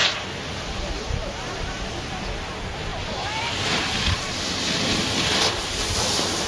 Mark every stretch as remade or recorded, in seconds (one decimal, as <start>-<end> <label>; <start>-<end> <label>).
0.0-1.9 remade; 1.9-2.9 recorded; 2.9-6.5 remade